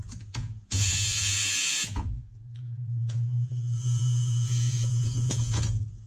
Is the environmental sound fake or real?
fake